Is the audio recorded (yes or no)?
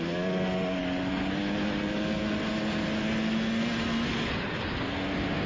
yes